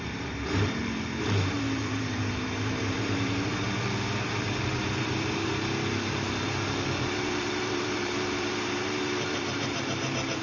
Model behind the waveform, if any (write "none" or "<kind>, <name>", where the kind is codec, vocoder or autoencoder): vocoder, BigVGAN v2